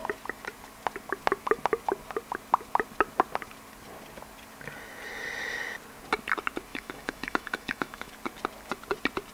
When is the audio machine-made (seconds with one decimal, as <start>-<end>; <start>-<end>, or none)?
6.7-8.1